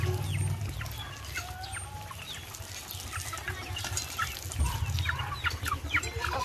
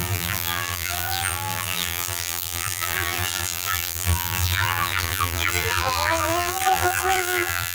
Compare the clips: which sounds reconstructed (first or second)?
second